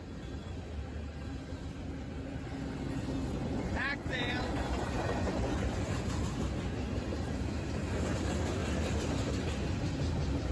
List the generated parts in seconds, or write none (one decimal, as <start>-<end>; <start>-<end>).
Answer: 3.4-6.2